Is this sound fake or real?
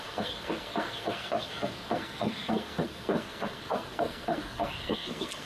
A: fake